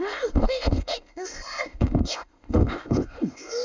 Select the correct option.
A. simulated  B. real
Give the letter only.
A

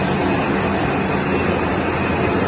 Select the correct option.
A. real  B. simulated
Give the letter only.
A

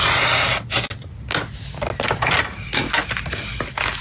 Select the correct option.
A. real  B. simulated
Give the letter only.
A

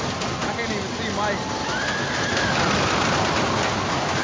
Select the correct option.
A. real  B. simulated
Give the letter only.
A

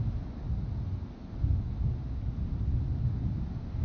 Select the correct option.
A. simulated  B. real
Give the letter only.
B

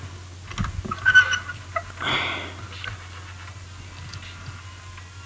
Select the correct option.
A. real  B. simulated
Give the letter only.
A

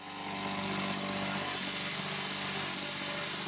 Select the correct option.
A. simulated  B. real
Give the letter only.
B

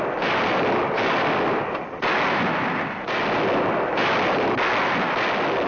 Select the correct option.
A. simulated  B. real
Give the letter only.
B